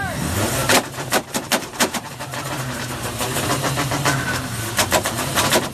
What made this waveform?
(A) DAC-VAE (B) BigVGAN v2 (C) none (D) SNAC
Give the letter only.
B